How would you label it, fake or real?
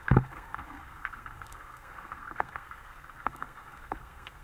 fake